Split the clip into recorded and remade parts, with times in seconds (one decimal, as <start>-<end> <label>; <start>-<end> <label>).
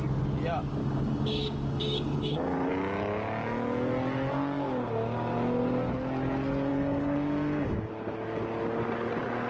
0.0-0.8 recorded; 0.8-2.7 remade; 2.7-6.7 recorded; 6.7-7.9 remade; 7.9-9.5 recorded